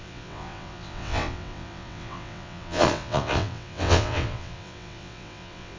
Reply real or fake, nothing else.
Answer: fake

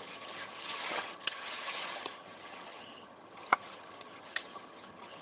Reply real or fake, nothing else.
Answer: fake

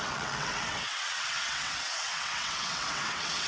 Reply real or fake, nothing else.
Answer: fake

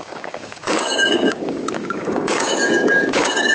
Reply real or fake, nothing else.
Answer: fake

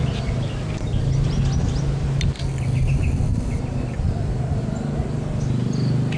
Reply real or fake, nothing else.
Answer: real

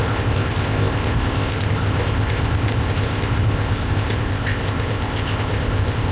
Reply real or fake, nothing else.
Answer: fake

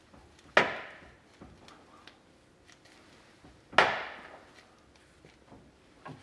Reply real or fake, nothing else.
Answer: real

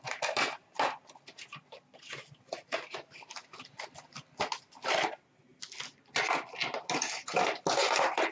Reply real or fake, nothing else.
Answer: real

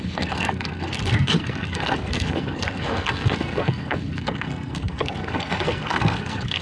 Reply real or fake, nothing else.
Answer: fake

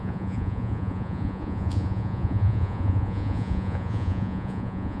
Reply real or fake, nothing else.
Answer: fake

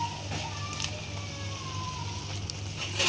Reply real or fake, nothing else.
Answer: real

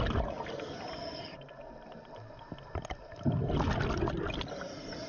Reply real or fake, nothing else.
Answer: real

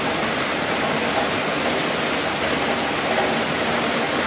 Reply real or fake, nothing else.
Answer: real